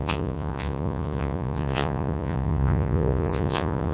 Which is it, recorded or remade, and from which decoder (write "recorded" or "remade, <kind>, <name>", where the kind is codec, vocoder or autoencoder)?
remade, vocoder, Vocos